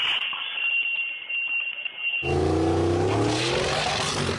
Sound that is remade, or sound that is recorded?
recorded